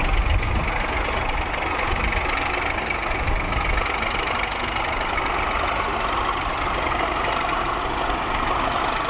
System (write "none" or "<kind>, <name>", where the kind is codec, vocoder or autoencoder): none